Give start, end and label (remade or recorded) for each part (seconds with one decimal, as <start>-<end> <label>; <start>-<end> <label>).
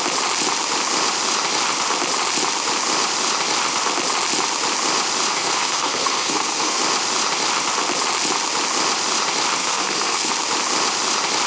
0.0-5.3 recorded; 5.3-6.8 remade; 6.8-9.6 recorded; 9.6-10.3 remade; 10.3-11.5 recorded